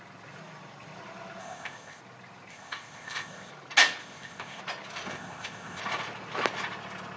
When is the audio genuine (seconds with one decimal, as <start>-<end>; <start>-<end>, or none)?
0.0-1.4; 2.0-2.5; 3.5-4.0; 4.6-5.1; 5.8-7.2